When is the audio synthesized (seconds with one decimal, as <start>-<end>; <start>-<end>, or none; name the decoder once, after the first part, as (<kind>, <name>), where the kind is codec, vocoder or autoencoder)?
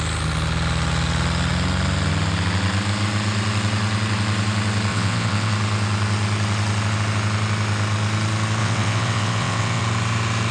4.9-5.5 (vocoder, WaveNeXt); 8.6-9.8